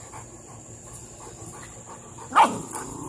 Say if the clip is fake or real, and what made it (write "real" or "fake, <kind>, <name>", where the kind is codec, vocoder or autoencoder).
real